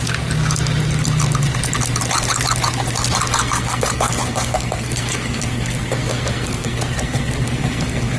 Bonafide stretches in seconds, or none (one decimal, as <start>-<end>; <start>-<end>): 0.0-3.3